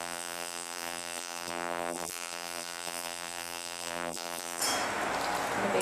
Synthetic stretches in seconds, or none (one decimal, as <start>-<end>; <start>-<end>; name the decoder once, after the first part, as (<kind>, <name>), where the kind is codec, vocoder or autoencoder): 0.0-4.6 (vocoder, BigVGAN v2)